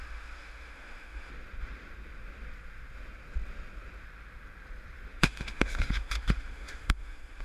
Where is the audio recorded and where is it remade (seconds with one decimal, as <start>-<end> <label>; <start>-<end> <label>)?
0.0-1.3 remade; 1.3-5.2 recorded; 5.2-7.4 remade